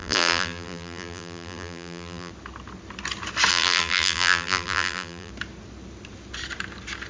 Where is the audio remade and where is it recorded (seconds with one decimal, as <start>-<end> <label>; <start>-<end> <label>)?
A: 0.0-2.3 remade; 2.3-3.5 recorded; 3.5-5.3 remade; 5.3-7.1 recorded